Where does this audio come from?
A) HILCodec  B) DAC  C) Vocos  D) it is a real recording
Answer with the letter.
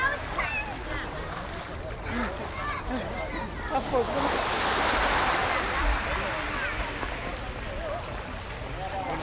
D